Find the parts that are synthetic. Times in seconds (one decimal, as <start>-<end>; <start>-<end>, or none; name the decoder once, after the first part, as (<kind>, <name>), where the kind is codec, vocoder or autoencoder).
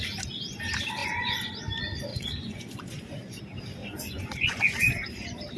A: 1.0-1.5 (vocoder, Vocos); 2.1-3.4; 3.8-4.9